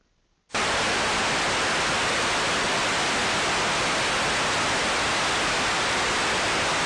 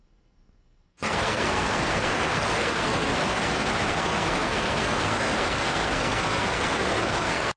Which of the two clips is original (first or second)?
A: first